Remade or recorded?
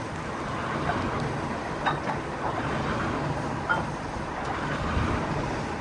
recorded